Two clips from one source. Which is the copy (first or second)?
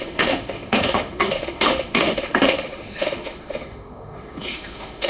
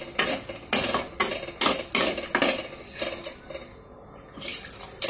first